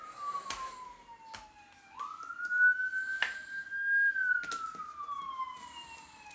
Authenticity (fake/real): real